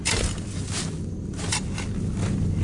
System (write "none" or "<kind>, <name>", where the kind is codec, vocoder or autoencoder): none